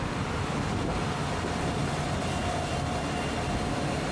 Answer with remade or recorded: recorded